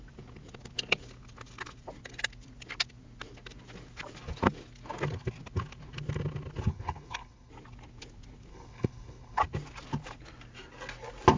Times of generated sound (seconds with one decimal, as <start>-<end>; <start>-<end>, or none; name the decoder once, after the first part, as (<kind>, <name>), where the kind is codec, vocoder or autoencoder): 6.7-7.5 (codec, HILCodec); 8.5-9.4